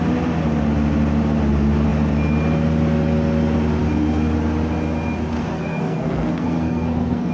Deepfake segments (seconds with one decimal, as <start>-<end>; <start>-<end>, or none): 5.4-7.3